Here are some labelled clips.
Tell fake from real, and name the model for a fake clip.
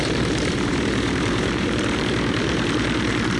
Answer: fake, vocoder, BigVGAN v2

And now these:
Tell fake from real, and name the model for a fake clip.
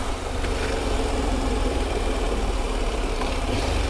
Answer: fake, vocoder, BigVGAN v2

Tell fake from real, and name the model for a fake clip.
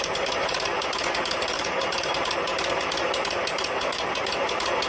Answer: fake, vocoder, BigVGAN v2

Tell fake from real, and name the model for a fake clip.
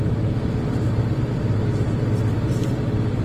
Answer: real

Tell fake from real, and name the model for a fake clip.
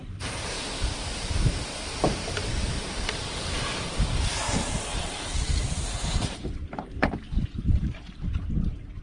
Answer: fake, vocoder, BigVGAN v2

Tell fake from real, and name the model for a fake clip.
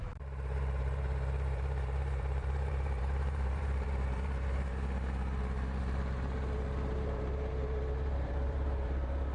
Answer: fake, vocoder, BigVGAN v2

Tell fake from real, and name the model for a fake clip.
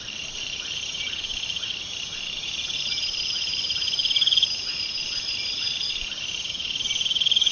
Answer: fake, vocoder, BigVGAN v2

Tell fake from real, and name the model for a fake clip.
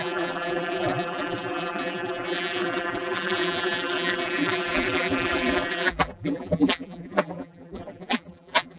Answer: fake, vocoder, BigVGAN v2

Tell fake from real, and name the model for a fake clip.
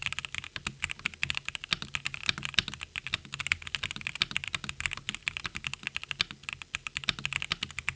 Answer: real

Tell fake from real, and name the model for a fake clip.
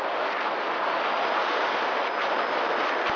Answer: real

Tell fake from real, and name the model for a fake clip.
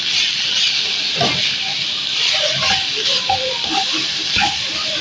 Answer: real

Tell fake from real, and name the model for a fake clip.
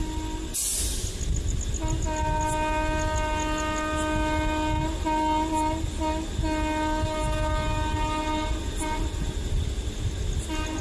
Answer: real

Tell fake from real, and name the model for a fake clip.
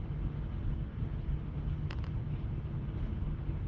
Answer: real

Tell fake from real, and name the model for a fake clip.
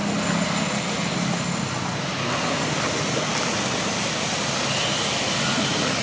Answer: real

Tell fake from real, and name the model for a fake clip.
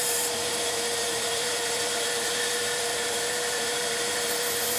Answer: fake, vocoder, BigVGAN v2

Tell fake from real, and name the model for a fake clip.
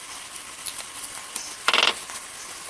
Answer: real